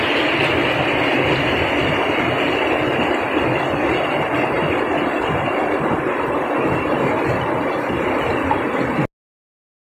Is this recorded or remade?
recorded